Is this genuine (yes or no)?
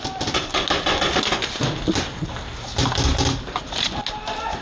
yes